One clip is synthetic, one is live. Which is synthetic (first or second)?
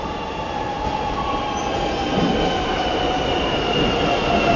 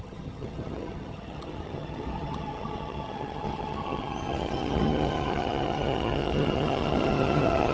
second